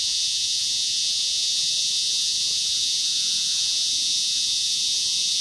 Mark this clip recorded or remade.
remade